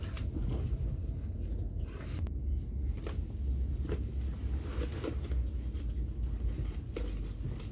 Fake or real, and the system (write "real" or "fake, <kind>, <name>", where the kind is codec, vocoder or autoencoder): real